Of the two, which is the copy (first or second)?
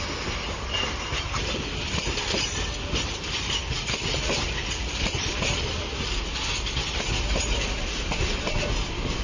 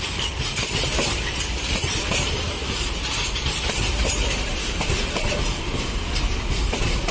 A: second